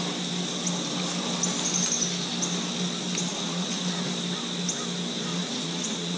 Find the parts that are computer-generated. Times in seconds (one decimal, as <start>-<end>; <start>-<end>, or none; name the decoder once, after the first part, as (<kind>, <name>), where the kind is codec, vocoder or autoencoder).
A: 3.3-3.8 (vocoder, Vocos); 5.3-6.2